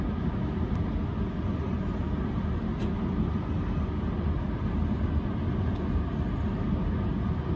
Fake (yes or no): no